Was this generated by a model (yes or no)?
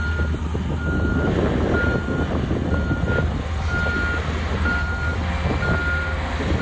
no